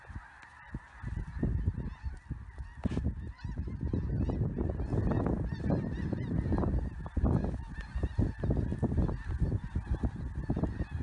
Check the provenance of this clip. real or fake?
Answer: real